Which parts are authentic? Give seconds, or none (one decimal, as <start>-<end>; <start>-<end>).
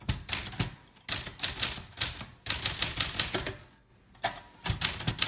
0.0-5.3